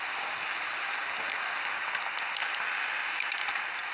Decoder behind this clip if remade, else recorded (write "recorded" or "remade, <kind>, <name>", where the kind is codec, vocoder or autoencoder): recorded